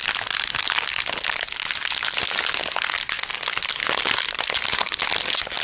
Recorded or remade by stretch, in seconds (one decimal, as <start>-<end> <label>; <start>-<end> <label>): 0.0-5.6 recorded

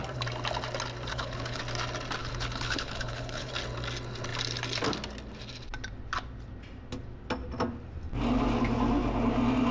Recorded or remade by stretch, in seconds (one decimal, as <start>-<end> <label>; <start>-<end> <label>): 0.0-1.1 recorded; 1.1-1.6 remade; 1.6-2.2 recorded; 2.2-3.5 remade; 3.5-9.7 recorded

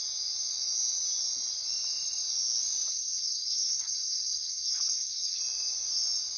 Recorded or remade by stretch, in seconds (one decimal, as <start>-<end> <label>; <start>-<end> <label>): 0.0-2.9 recorded; 2.9-5.4 remade; 5.4-6.4 recorded

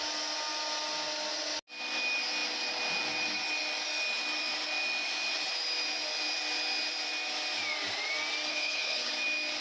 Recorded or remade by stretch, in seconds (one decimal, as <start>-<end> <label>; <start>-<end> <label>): 0.0-8.5 recorded; 8.5-9.1 remade; 9.1-9.6 recorded

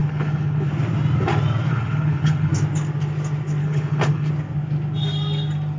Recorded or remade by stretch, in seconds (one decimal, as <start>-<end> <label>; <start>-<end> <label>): 0.0-0.7 remade; 0.7-1.7 recorded; 1.7-2.5 remade; 2.5-3.6 recorded; 3.6-4.3 remade; 4.3-5.8 recorded